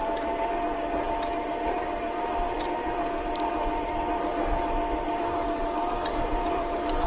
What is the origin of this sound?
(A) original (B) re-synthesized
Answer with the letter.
A